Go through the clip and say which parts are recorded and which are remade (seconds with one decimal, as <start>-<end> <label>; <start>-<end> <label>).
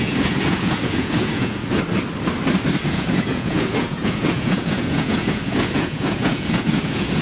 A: 0.0-1.6 remade; 1.6-2.9 recorded; 2.9-7.2 remade